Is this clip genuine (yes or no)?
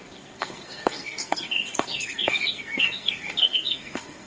no